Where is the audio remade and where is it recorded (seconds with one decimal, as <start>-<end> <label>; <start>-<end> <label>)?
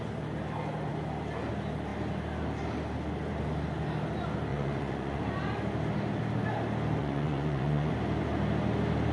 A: 0.0-4.5 recorded; 4.5-5.2 remade; 5.2-7.0 recorded; 7.0-7.9 remade; 7.9-9.1 recorded